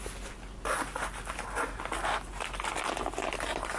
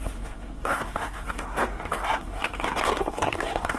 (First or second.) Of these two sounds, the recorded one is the first